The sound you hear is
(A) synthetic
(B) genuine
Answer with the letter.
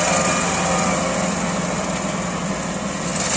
B